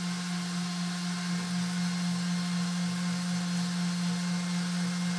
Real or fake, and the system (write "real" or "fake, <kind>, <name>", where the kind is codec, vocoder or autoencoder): real